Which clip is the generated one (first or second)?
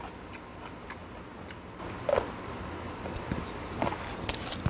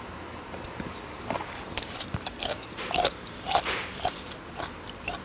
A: second